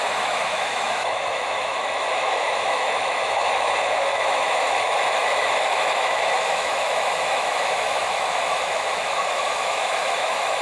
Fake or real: fake